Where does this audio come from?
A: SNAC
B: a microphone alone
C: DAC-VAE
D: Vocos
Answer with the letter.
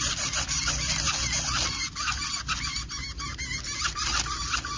B